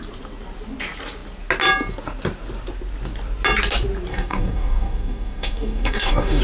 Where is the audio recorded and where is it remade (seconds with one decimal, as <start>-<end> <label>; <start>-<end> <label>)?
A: 0.0-4.1 recorded; 4.1-6.4 remade